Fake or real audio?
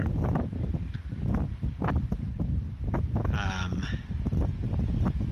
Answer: fake